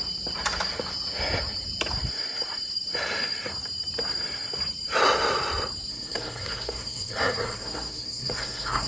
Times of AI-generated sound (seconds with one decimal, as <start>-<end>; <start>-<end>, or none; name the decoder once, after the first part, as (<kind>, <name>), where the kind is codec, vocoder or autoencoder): 5.9-8.9 (codec, SNAC)